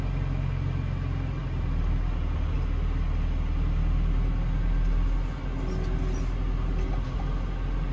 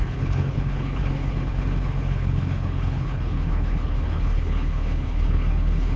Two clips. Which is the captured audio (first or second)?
first